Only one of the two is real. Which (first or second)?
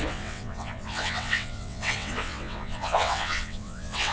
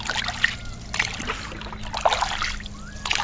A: second